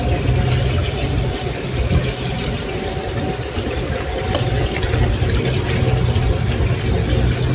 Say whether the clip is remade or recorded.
recorded